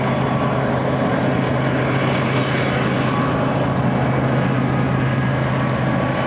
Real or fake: real